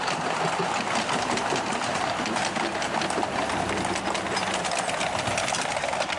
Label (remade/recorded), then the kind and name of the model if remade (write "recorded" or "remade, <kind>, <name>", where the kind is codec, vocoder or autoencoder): recorded